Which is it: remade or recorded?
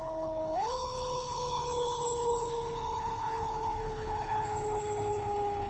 remade